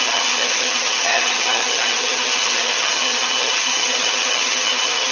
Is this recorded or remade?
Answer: remade